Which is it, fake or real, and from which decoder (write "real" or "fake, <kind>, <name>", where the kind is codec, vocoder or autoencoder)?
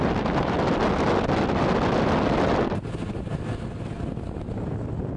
real